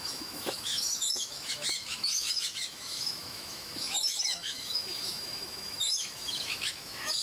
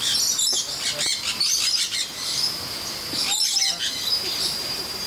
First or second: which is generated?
first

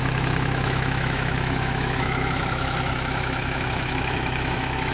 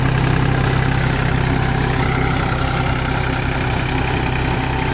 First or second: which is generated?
first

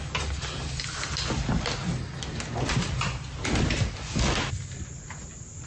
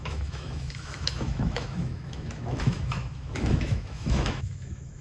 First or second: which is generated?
second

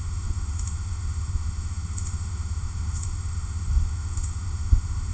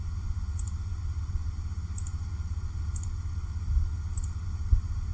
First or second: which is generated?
first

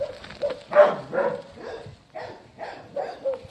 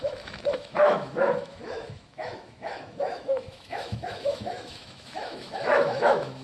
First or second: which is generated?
second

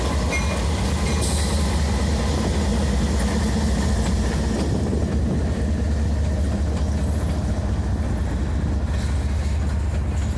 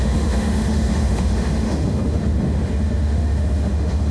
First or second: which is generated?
second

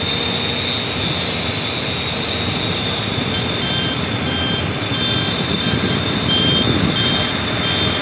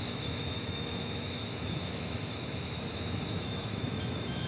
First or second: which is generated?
second